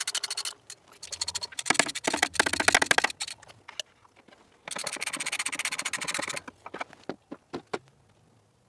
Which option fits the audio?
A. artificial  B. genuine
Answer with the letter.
B